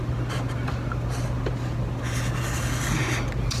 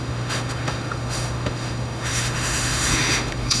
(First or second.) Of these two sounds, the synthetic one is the second